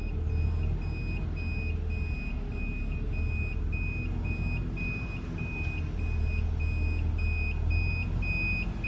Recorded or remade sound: recorded